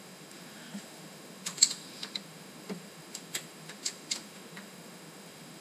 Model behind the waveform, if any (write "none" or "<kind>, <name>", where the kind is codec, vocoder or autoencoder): autoencoder, DAC-VAE